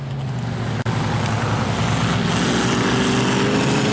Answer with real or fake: real